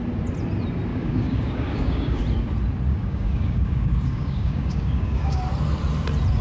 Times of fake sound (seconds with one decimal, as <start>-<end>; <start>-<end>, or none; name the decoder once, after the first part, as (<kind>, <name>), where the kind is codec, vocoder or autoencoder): 0.9-2.2 (codec, DAC); 2.9-5.4